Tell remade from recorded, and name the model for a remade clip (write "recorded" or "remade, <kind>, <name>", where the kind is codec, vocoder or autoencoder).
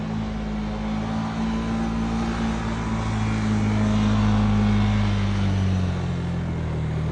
recorded